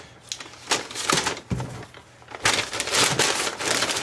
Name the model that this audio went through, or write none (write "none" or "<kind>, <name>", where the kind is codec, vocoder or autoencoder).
none